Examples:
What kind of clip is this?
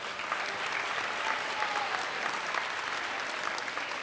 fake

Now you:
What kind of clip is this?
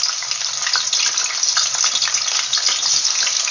real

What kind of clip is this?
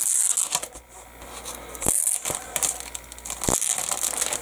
real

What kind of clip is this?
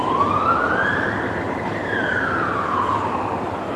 fake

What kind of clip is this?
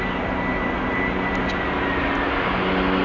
real